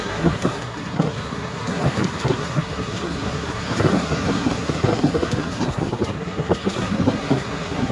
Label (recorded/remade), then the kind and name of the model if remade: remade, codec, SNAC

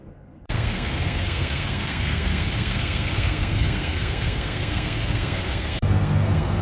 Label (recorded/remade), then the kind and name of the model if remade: remade, codec, SNAC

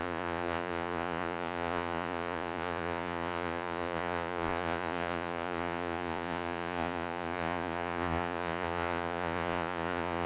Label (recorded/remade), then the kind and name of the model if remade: remade, vocoder, Vocos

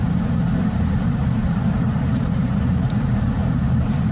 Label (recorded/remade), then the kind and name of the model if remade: remade, vocoder, BigVGAN v2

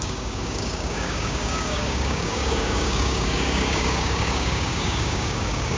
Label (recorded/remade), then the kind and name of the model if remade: remade, codec, DAC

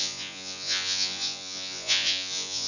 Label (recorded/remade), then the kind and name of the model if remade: remade, vocoder, Vocos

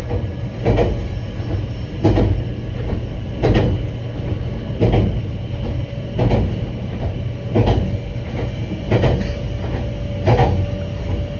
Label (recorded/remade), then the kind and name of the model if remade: recorded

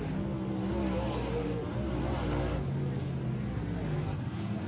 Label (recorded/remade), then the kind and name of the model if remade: recorded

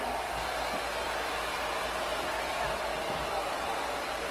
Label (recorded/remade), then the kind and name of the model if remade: recorded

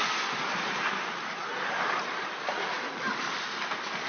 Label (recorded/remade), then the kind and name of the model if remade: recorded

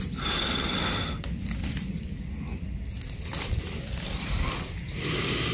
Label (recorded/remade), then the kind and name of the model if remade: remade, vocoder, BigVGAN v2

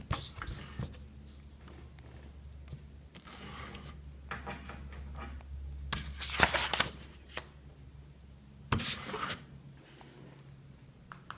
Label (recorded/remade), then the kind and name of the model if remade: recorded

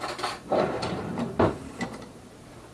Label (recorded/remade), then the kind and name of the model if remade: remade, vocoder, BigVGAN v2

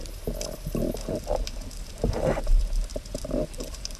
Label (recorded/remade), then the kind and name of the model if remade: remade, vocoder, BigVGAN v2